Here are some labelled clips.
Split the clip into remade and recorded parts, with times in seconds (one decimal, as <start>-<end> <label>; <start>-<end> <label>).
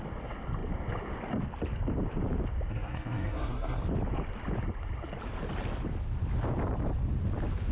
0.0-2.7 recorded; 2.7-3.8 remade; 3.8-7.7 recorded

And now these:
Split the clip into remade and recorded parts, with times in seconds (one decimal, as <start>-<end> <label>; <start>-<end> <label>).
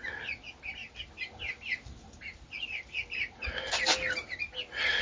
0.0-5.0 recorded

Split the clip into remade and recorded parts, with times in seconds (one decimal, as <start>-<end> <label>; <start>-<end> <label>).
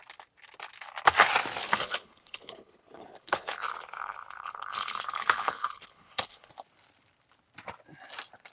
0.0-1.6 recorded; 1.6-6.5 remade; 6.5-8.5 recorded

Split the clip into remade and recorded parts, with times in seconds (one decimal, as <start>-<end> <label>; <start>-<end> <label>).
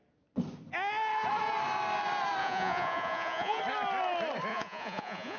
0.0-2.4 recorded; 2.4-3.6 remade; 3.6-4.5 recorded; 4.5-5.4 remade